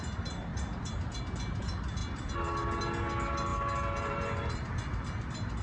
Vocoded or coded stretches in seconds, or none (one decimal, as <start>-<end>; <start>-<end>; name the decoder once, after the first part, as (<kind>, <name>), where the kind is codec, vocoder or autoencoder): none